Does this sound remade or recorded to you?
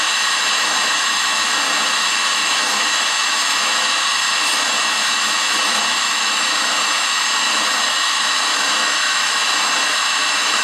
remade